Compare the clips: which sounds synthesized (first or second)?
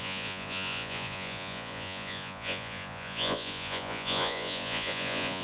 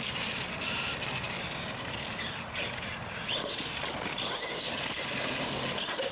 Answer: first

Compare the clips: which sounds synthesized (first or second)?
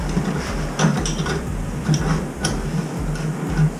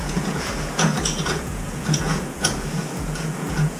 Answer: second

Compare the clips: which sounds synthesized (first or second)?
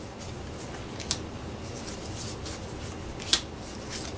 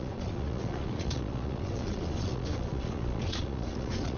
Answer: second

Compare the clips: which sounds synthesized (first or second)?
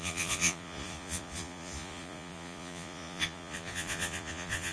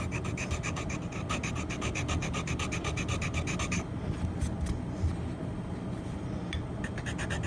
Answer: first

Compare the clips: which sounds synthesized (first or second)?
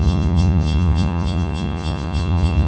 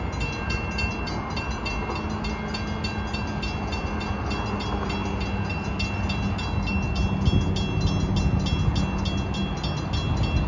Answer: first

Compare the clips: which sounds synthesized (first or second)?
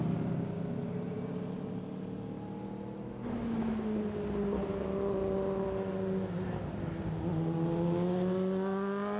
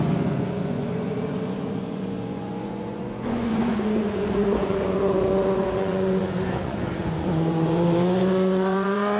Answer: second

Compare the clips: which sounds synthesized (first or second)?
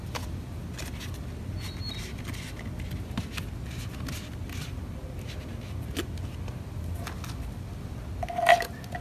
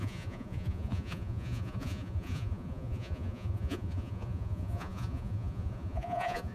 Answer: second